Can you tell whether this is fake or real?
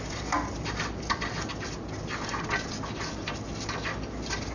real